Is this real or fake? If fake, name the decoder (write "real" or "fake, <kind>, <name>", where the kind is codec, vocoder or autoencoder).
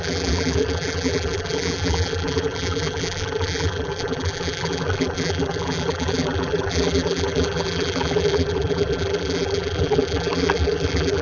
fake, vocoder, BigVGAN v2